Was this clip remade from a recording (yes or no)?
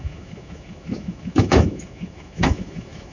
yes